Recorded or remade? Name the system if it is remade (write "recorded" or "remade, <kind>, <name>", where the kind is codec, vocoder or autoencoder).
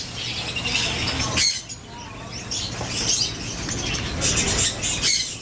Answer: recorded